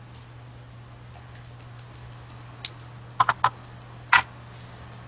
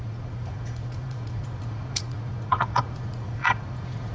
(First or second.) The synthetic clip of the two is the second